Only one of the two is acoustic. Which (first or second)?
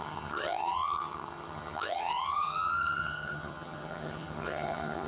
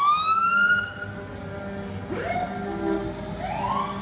second